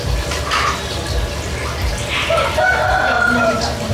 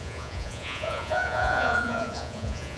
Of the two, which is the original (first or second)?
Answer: first